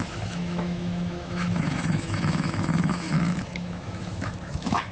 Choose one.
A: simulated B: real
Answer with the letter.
A